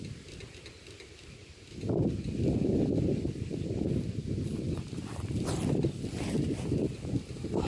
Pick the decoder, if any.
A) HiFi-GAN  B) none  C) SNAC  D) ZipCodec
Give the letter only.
B